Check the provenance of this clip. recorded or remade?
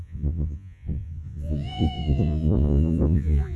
remade